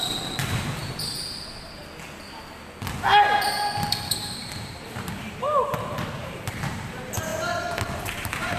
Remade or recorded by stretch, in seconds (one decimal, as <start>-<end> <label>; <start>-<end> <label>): 0.0-0.8 remade; 0.8-4.1 recorded; 4.1-7.3 remade; 7.3-8.0 recorded; 8.0-8.6 remade